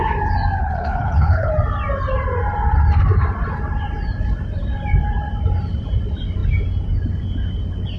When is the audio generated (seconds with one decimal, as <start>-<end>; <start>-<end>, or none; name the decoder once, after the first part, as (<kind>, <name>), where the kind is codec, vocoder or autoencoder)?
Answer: 0.6-1.5 (codec, HILCodec)

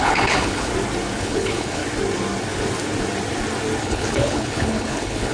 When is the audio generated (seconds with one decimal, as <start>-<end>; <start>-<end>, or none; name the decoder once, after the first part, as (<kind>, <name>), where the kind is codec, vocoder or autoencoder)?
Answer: 0.0-0.7 (codec, HILCodec); 1.2-1.8; 3.8-5.3

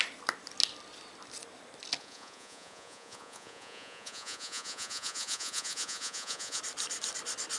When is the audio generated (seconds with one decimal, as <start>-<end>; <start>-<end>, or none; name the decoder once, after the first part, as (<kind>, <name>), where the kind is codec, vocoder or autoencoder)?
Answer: 2.0-6.6 (vocoder, Vocos)

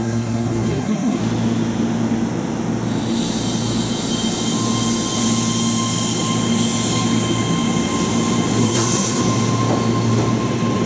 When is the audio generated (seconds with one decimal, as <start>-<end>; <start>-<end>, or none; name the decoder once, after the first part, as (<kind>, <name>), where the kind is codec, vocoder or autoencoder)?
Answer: 0.0-1.2 (codec, SNAC); 8.6-9.2

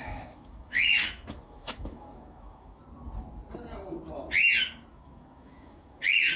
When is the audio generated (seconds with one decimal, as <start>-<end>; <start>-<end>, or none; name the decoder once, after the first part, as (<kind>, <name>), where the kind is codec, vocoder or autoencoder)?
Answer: 0.0-2.8 (autoencoder, DAC-VAE); 4.9-6.4

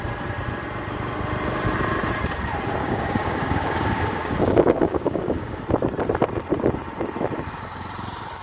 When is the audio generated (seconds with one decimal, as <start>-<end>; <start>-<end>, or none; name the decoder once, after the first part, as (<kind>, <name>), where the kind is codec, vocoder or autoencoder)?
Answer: 2.8-5.6 (codec, DAC)

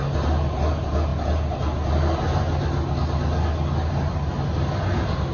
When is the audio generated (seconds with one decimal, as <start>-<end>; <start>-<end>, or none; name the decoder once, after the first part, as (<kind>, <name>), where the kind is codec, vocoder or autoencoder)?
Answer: none

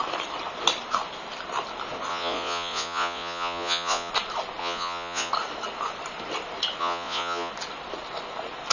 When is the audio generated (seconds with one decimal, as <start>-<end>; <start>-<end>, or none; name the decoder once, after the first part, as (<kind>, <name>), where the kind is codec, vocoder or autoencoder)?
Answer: 2.1-4.1 (vocoder, Vocos); 4.6-5.3; 6.8-7.5